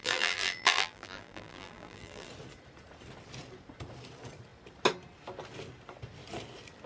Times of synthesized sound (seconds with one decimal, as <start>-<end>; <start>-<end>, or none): 0.0-2.3